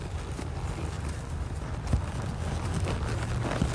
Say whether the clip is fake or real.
real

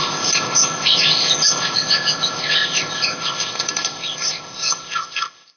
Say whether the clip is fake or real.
fake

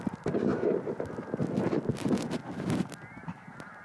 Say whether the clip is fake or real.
real